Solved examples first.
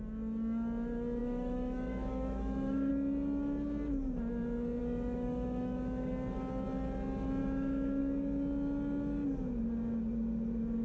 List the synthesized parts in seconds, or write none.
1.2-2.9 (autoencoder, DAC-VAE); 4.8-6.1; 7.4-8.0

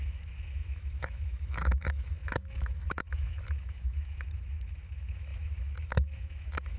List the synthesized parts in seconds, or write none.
0.0-6.8 (autoencoder, DAC-VAE)